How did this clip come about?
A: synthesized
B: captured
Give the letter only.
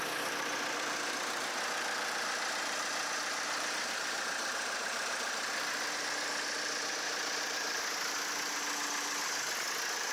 B